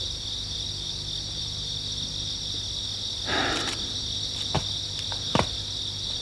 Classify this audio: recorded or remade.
recorded